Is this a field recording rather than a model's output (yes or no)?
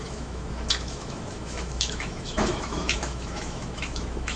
no